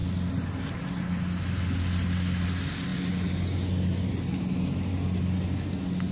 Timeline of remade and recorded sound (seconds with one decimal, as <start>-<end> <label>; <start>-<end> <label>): 0.0-6.1 recorded